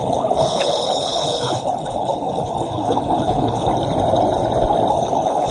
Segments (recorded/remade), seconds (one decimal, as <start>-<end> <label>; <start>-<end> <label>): 0.0-3.7 remade; 3.7-4.9 recorded; 4.9-5.5 remade

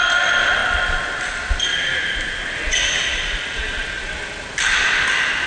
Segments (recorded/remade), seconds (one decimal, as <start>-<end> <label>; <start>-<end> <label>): 0.0-5.5 recorded

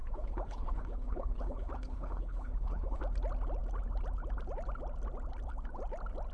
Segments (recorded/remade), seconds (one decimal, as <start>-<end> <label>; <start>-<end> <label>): 0.0-3.0 remade; 3.0-6.3 recorded

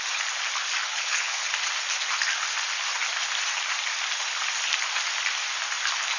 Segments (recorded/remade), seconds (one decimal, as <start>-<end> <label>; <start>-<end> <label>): 0.0-0.8 recorded; 0.8-1.5 remade; 1.5-6.2 recorded

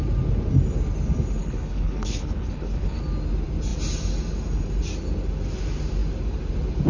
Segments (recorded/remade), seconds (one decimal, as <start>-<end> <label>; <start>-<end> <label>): 0.0-1.4 recorded; 1.4-3.0 remade; 3.0-6.9 recorded

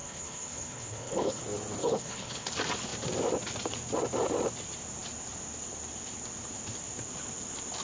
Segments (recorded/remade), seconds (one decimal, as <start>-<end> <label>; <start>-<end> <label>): 0.0-1.4 remade; 1.4-1.8 recorded; 1.8-2.5 remade; 2.5-7.8 recorded

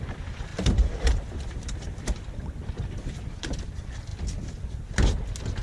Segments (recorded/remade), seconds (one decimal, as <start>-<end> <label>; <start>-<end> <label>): 0.0-5.6 recorded